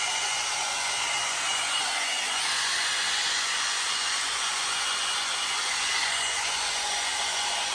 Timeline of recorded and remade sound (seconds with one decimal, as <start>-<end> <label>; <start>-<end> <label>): 0.0-7.7 remade